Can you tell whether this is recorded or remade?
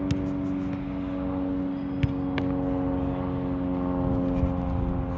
recorded